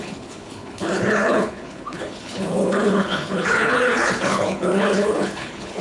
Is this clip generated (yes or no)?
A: yes